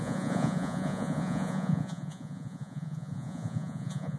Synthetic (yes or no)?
yes